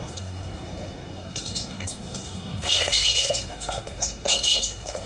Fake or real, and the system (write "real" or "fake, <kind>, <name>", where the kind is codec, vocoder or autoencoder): fake, codec, SNAC